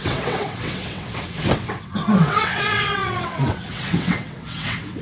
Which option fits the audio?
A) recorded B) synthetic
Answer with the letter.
B